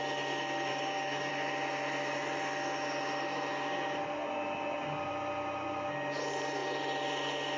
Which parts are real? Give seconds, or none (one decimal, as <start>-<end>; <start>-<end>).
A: 0.0-0.7; 1.3-7.6